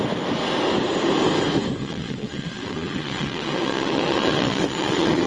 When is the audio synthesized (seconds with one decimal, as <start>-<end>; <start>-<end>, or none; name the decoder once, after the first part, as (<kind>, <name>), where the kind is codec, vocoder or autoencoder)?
1.8-5.3 (vocoder, WaveNeXt)